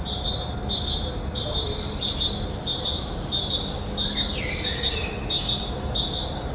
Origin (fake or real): real